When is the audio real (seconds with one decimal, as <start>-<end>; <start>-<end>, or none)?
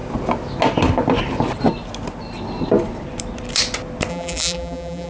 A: 0.0-4.1